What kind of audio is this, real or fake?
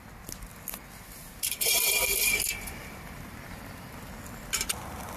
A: real